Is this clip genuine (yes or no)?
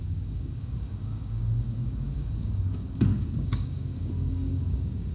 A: no